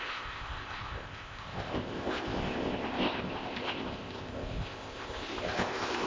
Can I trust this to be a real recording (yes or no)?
no